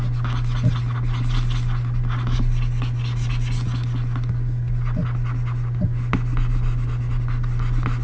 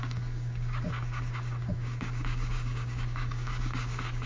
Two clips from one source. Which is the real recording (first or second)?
first